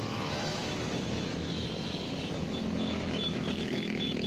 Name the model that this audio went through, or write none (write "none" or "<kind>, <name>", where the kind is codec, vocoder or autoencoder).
autoencoder, DAC-VAE